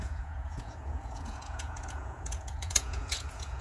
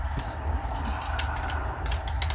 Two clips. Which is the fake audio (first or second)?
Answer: first